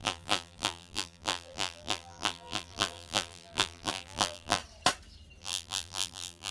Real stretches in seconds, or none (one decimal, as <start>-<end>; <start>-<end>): 4.6-5.4